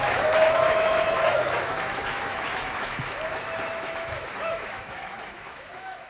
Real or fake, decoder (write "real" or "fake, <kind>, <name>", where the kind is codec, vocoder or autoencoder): fake, autoencoder, DAC-VAE